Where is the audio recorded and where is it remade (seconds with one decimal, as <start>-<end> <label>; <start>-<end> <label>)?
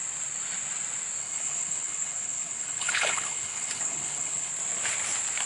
0.0-1.2 recorded; 1.2-4.5 remade; 4.5-5.5 recorded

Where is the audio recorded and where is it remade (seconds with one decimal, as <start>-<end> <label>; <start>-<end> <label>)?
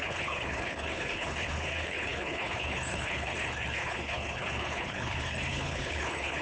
0.0-6.4 remade